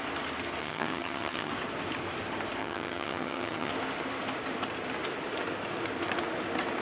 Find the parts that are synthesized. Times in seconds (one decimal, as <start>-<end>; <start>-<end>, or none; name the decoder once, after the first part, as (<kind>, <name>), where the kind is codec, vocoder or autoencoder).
0.6-1.5 (vocoder, HiFi-GAN); 2.6-3.7

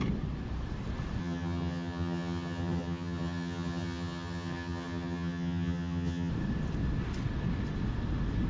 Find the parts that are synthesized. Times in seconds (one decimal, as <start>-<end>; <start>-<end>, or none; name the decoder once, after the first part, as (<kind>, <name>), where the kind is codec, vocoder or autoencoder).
1.2-6.3 (vocoder, HiFi-GAN)

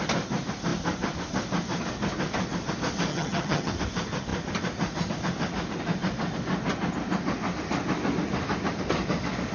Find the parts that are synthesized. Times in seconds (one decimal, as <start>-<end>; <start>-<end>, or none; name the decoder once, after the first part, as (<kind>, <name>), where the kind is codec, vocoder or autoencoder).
3.1-3.7 (vocoder, HiFi-GAN)

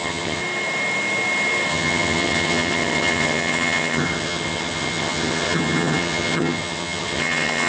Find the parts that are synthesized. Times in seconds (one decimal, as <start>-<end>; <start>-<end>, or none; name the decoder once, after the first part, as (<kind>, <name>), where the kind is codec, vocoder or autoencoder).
0.0-0.4 (vocoder, HiFi-GAN); 1.7-7.7

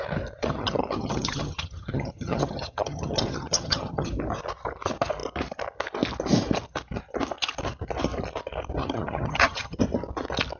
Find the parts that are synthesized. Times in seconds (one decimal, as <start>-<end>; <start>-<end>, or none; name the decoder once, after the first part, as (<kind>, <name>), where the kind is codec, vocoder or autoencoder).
0.4-4.1 (vocoder, HiFi-GAN); 8.8-9.8